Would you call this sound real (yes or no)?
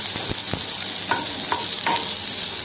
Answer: yes